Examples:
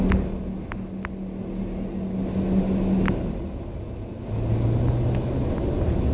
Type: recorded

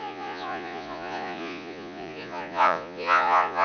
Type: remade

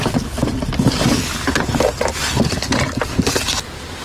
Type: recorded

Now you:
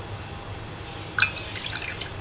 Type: recorded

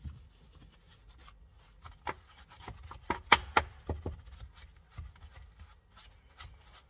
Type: recorded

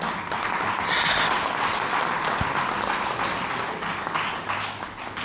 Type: recorded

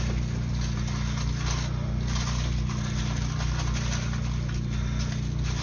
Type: recorded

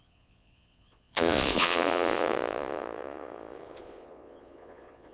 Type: remade